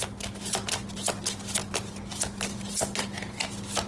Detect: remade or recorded recorded